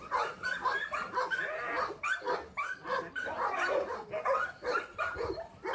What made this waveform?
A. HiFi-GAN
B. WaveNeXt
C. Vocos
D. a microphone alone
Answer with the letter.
D